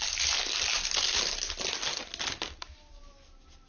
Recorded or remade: recorded